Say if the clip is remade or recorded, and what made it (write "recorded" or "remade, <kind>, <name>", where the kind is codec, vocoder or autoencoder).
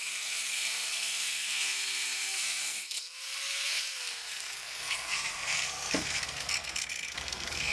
remade, codec, SNAC